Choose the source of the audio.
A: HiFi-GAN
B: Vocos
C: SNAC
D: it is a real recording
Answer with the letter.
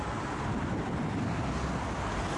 D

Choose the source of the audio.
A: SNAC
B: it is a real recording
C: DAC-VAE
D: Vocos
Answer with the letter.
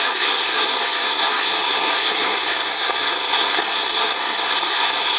A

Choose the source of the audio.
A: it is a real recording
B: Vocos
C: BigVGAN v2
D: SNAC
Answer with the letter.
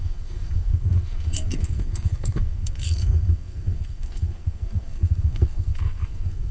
D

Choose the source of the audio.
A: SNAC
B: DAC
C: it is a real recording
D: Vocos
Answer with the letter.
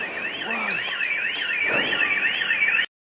C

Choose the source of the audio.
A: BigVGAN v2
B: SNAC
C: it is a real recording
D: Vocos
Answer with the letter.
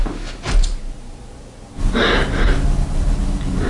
C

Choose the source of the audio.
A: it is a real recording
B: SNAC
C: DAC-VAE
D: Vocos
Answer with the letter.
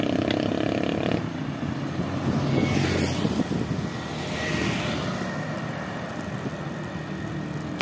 A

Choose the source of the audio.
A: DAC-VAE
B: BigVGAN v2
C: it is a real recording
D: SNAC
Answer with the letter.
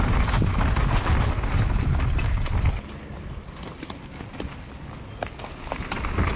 C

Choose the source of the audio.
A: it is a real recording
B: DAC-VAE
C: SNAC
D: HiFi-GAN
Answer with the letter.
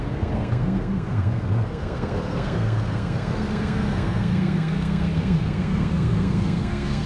C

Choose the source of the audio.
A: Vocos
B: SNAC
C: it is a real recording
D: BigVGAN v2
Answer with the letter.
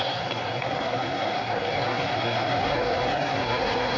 B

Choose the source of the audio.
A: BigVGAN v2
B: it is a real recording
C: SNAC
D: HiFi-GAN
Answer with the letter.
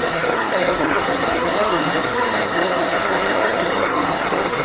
C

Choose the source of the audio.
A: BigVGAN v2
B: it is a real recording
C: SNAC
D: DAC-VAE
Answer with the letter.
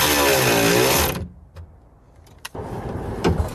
B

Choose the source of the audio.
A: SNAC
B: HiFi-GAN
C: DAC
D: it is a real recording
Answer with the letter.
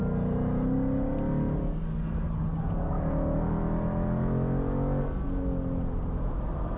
D